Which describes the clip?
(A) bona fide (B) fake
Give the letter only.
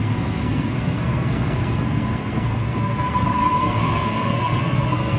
B